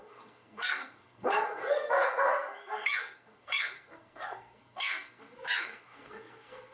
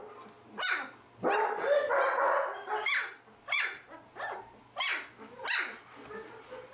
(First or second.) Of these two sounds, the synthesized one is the first